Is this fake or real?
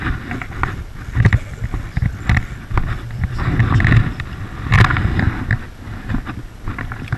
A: real